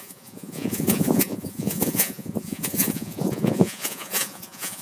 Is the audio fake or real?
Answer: fake